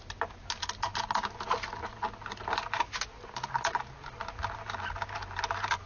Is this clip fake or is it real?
real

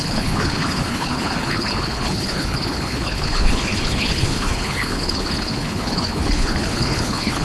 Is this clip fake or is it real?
fake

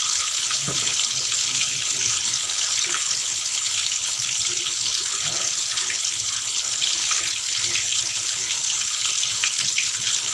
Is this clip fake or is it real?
fake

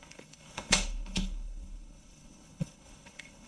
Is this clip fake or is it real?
fake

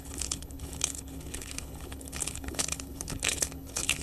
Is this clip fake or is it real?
fake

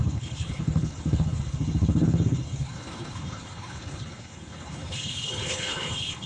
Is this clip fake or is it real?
fake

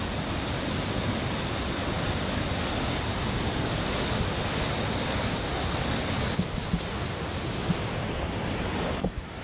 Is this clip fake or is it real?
real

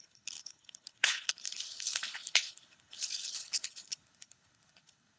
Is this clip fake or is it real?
fake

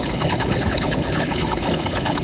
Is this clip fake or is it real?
fake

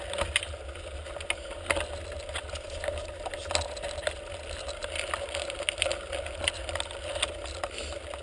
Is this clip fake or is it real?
real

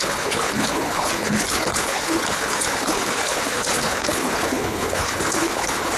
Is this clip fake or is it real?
fake